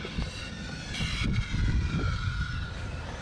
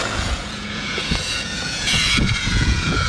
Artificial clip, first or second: second